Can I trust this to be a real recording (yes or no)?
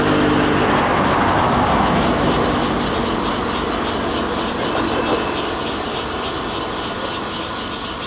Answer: yes